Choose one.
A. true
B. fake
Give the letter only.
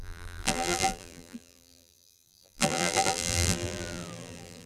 B